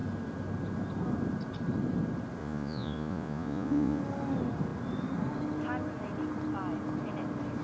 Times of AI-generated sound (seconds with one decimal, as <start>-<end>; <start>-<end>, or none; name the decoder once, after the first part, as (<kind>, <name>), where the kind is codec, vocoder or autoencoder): 2.4-4.0 (vocoder, Vocos)